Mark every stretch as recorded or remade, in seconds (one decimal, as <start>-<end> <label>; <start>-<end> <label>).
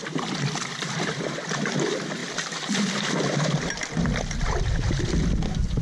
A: 0.0-5.8 recorded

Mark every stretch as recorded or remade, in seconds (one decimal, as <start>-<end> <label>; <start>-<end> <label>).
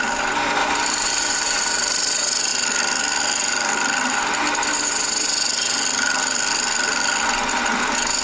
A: 0.0-0.6 recorded; 0.6-1.6 remade; 1.6-8.2 recorded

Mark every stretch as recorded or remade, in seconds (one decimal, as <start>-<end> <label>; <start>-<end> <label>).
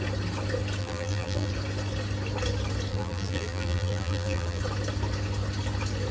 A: 0.0-0.8 recorded; 0.8-1.5 remade; 1.5-2.9 recorded; 2.9-4.6 remade; 4.6-6.1 recorded